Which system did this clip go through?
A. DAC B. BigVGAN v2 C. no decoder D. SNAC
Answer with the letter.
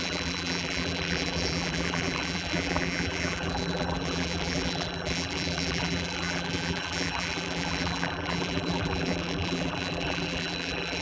B